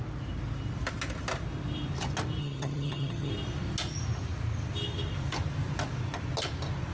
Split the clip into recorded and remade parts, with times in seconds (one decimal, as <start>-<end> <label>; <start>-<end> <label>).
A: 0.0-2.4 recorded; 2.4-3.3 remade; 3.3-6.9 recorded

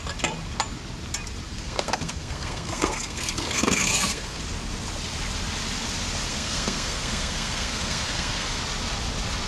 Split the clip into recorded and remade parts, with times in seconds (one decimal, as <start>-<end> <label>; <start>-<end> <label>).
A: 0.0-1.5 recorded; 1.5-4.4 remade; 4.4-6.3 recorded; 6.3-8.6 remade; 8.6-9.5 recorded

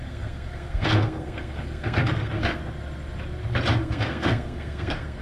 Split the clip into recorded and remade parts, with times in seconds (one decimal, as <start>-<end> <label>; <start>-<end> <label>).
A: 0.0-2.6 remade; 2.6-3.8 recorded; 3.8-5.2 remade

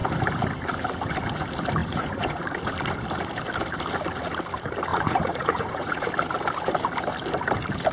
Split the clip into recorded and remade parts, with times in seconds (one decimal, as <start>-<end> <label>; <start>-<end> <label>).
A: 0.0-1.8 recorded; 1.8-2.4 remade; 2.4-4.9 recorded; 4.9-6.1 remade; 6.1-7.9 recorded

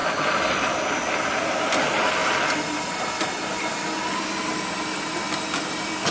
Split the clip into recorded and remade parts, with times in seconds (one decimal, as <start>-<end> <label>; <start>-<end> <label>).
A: 0.0-6.1 recorded